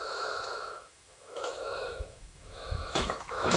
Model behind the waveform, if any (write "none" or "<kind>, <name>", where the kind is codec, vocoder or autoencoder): autoencoder, DAC-VAE